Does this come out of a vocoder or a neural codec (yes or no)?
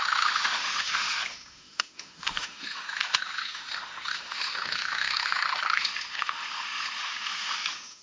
yes